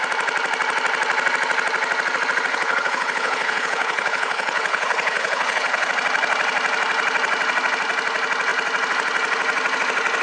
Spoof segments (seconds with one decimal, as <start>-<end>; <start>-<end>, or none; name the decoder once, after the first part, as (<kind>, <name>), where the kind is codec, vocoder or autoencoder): 2.5-5.9 (codec, HILCodec)

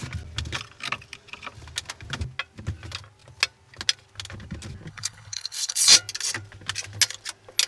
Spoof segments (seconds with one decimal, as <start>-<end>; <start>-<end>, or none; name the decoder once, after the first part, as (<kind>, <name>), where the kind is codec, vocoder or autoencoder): 4.9-5.9 (codec, HILCodec)

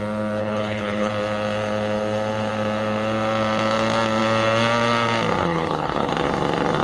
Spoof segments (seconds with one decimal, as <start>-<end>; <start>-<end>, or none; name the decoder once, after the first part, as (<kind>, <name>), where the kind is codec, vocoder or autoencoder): 0.4-1.1 (codec, HILCodec); 5.4-6.1

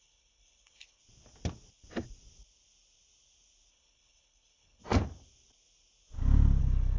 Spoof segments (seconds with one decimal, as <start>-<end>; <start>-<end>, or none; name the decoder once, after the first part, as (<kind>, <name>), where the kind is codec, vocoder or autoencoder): 0.0-1.0 (codec, HILCodec); 3.7-4.8; 6.6-7.0